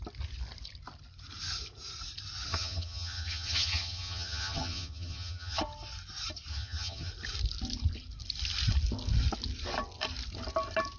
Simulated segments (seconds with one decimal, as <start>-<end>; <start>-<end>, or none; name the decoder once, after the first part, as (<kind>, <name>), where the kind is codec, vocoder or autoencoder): 2.5-5.6 (vocoder, HiFi-GAN); 6.5-7.1

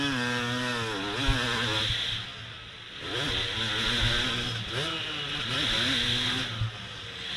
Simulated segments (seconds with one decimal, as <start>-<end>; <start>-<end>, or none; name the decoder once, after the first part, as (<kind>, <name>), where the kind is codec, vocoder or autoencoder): none

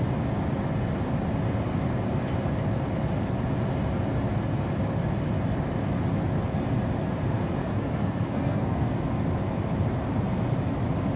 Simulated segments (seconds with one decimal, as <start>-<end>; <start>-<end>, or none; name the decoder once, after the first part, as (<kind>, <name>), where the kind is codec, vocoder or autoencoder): 7.6-8.9 (codec, SNAC)